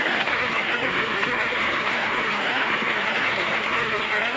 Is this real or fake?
fake